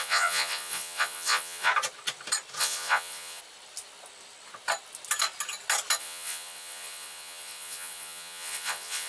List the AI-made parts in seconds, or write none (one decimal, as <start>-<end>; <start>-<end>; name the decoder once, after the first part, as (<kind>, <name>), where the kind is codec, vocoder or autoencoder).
0.0-1.7 (vocoder, Vocos); 2.6-3.4; 6.0-9.1